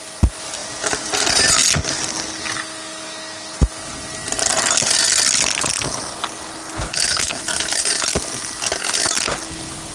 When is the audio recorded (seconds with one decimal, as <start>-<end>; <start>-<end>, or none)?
0.0-6.9; 7.4-9.9